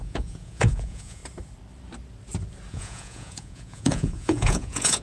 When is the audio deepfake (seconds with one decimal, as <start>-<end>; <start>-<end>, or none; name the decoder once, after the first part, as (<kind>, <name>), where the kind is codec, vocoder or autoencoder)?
0.0-1.2 (vocoder, Vocos); 2.7-5.0